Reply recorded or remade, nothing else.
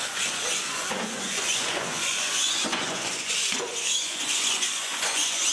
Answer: remade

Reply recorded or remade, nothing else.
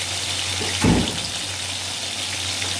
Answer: recorded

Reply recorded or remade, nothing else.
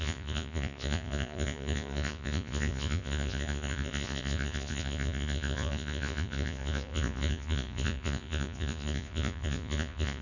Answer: remade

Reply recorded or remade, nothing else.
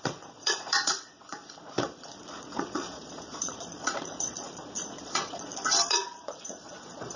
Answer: remade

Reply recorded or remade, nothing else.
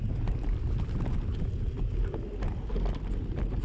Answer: recorded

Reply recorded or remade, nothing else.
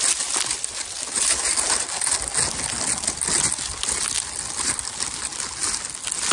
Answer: recorded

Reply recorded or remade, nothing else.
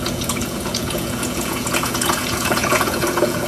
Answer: remade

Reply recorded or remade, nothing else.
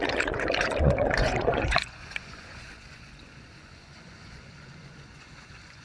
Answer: remade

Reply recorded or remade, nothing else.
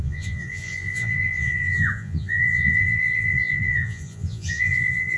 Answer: remade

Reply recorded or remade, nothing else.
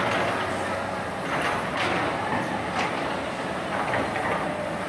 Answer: recorded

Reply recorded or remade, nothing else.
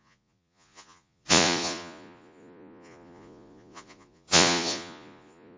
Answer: remade